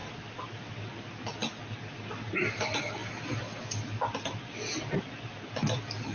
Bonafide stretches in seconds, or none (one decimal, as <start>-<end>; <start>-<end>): 0.7-3.0; 3.6-6.1